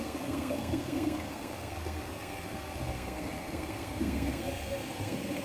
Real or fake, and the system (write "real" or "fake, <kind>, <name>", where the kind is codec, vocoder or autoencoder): fake, codec, SNAC